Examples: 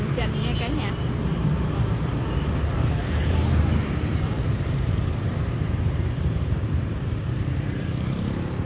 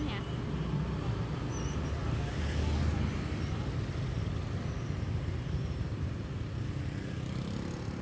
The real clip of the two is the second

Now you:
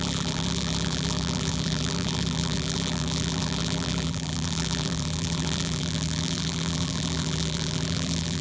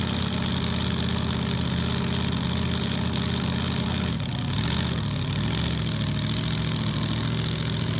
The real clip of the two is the second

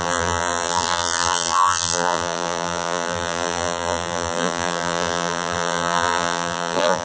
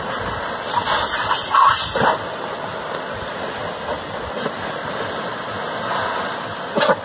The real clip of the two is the second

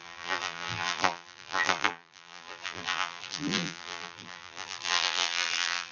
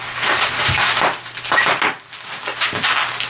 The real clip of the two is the second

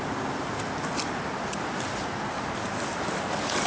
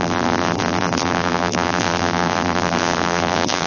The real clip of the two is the first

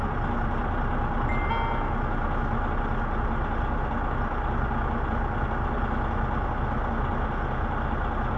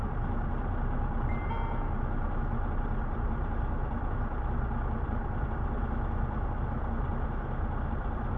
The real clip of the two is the first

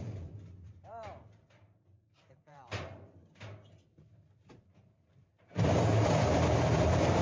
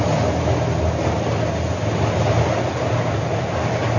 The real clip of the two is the second